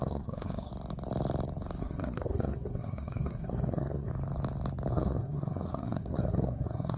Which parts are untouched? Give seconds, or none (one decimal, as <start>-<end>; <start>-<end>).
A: 0.7-1.8; 4.1-4.9